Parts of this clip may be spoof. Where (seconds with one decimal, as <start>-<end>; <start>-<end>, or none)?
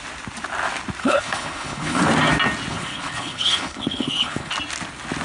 1.0-2.0; 2.7-4.5